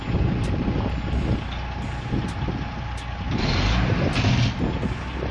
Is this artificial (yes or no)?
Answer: no